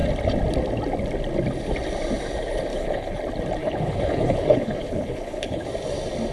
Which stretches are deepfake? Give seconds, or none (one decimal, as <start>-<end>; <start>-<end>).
2.7-3.2; 3.6-5.7